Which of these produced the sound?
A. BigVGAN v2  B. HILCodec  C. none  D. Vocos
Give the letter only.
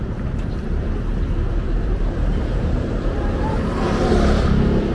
A